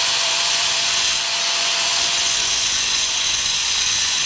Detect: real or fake fake